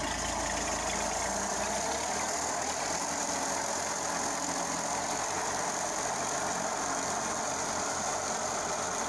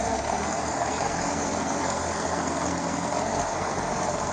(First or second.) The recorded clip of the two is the first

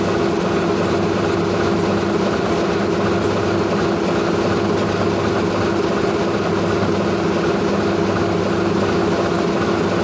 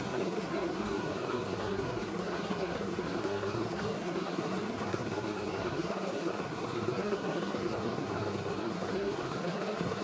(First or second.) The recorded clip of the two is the first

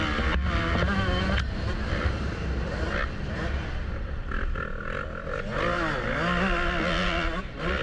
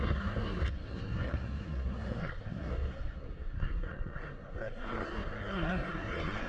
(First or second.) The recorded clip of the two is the first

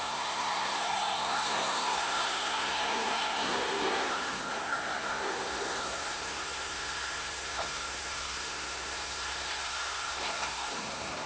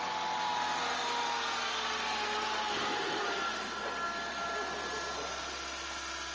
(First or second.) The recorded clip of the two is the second